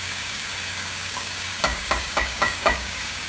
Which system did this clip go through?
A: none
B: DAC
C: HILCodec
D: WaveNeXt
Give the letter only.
B